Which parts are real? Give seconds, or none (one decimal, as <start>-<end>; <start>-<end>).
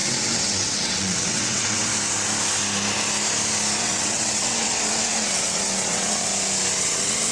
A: 1.9-3.8; 6.3-6.8